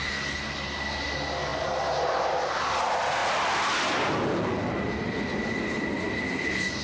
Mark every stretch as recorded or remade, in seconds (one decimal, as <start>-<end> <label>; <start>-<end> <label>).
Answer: 0.0-6.8 recorded